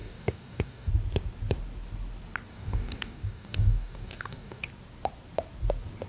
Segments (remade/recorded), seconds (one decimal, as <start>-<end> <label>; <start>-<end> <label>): 0.0-0.9 remade; 0.9-2.5 recorded; 2.5-4.6 remade; 4.6-6.1 recorded